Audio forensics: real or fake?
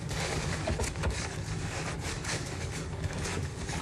fake